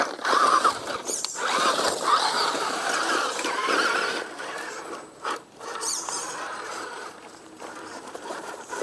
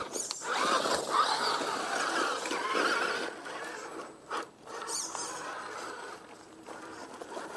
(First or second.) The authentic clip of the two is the second